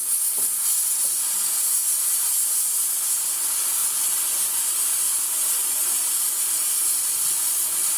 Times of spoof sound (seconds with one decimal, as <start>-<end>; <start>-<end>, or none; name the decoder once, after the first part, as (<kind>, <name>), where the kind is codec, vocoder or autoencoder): none